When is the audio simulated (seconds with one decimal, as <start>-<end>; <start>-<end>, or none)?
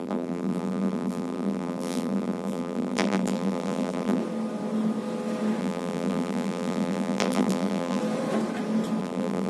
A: 0.0-4.2; 5.6-8.0; 9.0-9.5